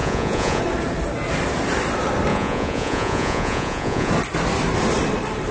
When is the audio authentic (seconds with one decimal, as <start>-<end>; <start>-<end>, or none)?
0.6-2.3; 4.1-5.5